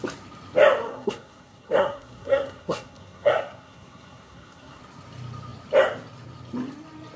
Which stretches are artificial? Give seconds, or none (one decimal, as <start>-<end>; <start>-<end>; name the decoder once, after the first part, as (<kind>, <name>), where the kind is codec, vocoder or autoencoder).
0.9-4.8 (codec, SNAC)

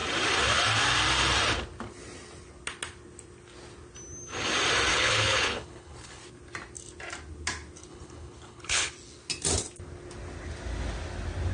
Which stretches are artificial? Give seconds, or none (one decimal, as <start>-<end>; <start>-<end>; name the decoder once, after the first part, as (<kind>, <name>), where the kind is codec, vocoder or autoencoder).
4.9-6.2 (codec, HILCodec); 7.9-8.9

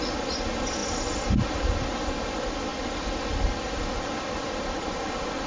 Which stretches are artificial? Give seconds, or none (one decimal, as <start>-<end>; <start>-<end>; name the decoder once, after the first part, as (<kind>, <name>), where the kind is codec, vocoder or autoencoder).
none

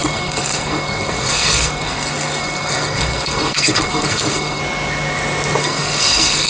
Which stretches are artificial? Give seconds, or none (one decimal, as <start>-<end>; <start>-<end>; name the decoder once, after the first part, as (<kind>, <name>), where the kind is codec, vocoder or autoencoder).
0.0-4.6 (codec, SNAC); 5.6-6.5